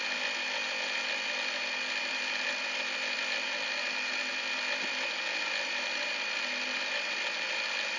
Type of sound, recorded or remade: recorded